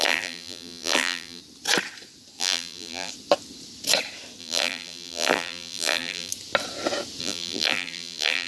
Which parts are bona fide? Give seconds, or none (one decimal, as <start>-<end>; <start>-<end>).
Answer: 1.4-2.4; 3.1-4.4; 6.3-7.2